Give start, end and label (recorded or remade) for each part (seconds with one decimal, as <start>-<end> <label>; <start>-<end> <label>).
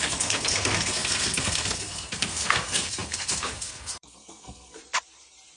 0.0-4.8 remade; 4.8-5.6 recorded